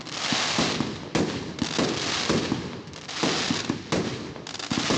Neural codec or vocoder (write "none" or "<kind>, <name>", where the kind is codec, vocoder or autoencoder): none